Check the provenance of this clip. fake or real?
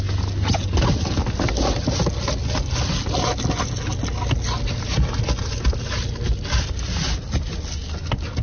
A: real